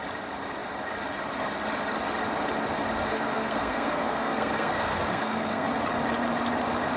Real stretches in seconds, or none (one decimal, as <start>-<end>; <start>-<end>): 0.0-3.1; 5.7-7.0